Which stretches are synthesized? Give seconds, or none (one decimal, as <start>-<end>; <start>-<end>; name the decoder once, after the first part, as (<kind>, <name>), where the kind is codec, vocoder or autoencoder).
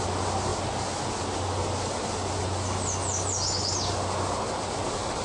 none